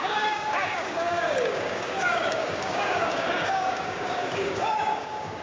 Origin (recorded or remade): remade